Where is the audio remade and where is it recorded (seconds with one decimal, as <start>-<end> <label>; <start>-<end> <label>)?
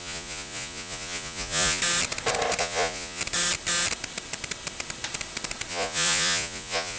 0.0-1.8 remade; 1.8-2.6 recorded; 2.6-3.2 remade; 3.2-5.7 recorded; 5.7-7.0 remade